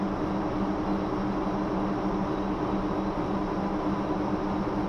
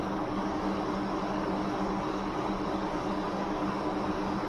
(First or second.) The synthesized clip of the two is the second